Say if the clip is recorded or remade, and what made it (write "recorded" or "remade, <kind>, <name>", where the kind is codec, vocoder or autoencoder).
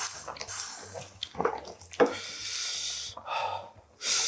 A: recorded